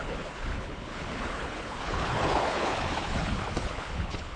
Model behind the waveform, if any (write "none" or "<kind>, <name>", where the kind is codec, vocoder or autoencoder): codec, HILCodec